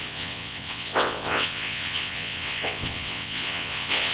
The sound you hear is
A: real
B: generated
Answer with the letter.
B